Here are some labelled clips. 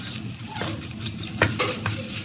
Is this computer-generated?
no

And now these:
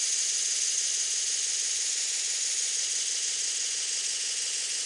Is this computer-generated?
yes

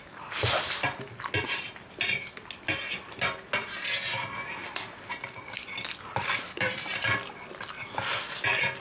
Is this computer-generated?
no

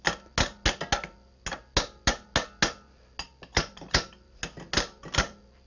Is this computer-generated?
no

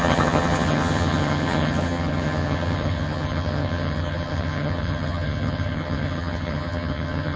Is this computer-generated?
yes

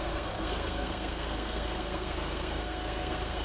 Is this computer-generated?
yes